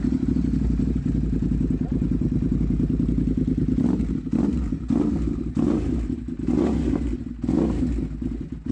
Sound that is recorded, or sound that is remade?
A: recorded